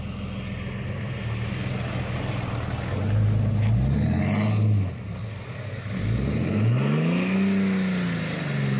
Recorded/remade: recorded